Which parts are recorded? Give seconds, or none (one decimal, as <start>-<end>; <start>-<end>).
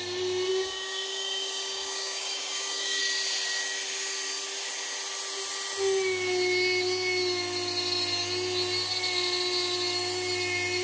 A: 0.0-0.5; 3.0-10.8